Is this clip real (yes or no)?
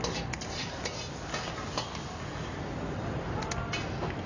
yes